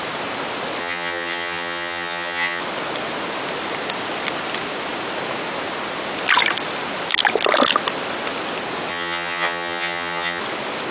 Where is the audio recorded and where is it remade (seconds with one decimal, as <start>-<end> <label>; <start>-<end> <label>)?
0.0-0.8 recorded; 0.8-2.6 remade; 2.6-8.9 recorded; 8.9-10.4 remade; 10.4-10.9 recorded